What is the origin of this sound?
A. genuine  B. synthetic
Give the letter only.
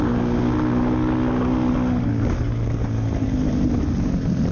A